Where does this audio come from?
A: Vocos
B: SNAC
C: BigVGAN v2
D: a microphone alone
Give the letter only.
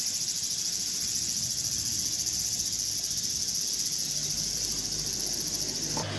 D